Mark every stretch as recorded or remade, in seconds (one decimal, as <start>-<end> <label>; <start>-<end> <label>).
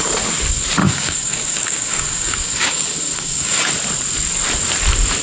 0.0-0.8 recorded; 0.8-3.7 remade; 3.7-5.2 recorded